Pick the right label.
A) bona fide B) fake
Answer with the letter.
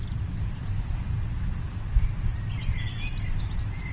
A